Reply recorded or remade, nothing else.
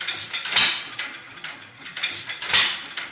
recorded